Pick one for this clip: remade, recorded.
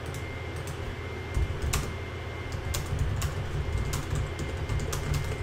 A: recorded